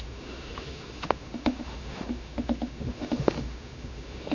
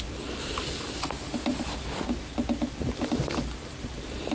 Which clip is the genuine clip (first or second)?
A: second